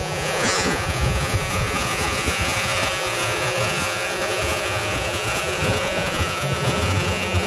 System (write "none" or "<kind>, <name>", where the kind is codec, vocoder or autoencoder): vocoder, Vocos